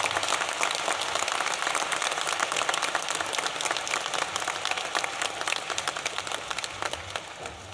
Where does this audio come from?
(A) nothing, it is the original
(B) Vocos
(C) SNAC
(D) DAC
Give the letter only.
A